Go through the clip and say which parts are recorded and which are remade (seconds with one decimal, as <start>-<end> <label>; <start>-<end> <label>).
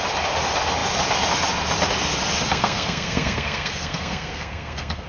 0.0-2.5 recorded; 2.5-5.1 remade